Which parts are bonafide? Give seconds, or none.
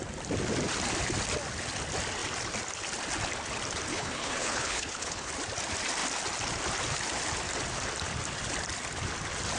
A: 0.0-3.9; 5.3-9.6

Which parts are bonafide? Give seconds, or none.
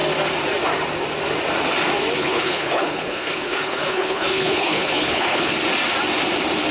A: 0.0-2.2; 5.5-6.7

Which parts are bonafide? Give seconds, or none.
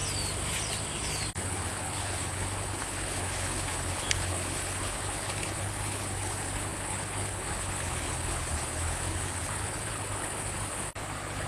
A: 0.0-1.3